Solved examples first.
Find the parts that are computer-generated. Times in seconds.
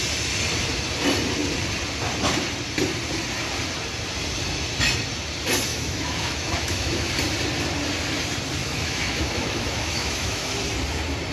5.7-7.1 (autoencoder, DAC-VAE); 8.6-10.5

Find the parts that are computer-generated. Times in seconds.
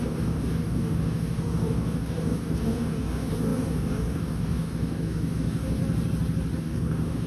0.0-5.8 (codec, DAC); 6.6-7.3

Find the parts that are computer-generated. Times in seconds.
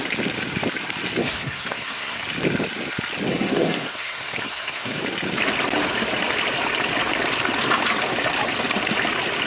1.2-2.2 (codec, SNAC); 3.3-5.0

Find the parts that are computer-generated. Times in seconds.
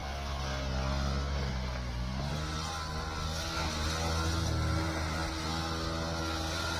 none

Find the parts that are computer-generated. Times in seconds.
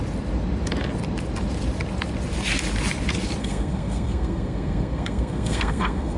3.4-6.2 (codec, SNAC)